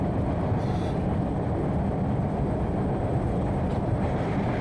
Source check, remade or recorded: recorded